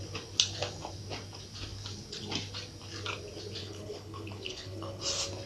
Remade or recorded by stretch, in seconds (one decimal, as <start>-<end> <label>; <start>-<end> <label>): 0.0-3.6 recorded; 3.6-5.0 remade; 5.0-5.5 recorded